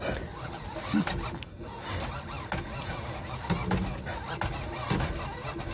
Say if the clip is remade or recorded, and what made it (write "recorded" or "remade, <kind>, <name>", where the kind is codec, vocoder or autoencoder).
recorded